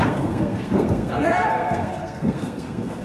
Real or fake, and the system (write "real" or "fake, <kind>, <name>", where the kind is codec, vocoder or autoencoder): fake, codec, SNAC